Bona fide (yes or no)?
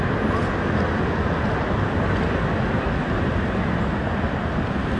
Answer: yes